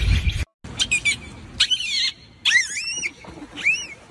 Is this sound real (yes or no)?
yes